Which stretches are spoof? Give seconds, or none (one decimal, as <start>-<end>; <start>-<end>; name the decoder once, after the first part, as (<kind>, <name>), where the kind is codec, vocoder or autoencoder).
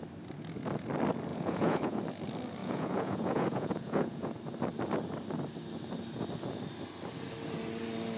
1.3-2.0 (vocoder, Vocos); 2.6-4.3